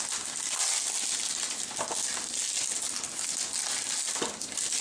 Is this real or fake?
real